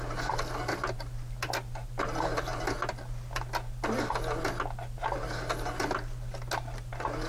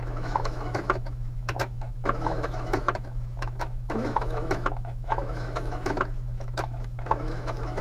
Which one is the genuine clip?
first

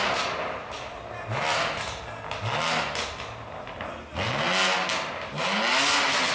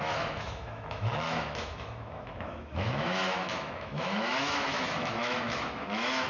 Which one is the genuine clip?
first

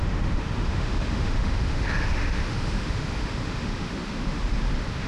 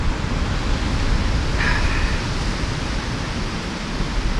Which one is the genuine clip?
second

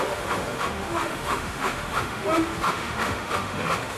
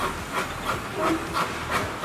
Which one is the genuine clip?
second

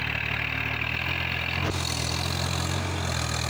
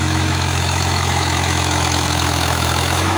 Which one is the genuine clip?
first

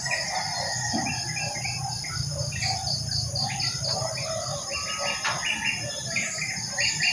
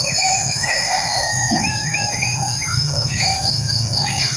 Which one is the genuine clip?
first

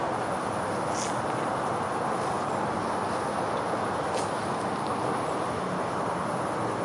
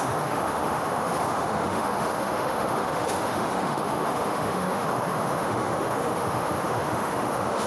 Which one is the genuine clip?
first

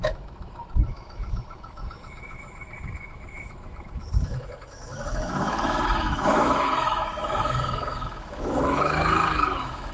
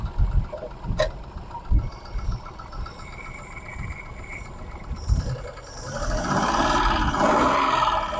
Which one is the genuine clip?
second